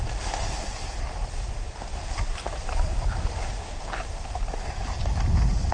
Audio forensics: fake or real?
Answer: real